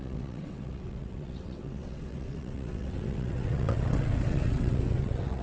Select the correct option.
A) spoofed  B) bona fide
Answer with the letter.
A